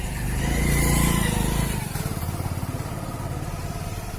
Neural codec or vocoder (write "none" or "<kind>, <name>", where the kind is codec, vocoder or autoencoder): none